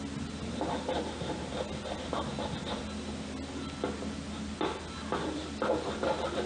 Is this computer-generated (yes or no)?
no